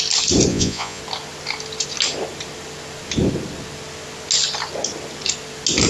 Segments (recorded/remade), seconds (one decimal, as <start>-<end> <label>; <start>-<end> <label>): 0.0-0.5 recorded; 0.5-1.0 remade; 1.0-5.9 recorded